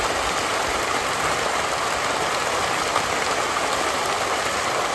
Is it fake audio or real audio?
real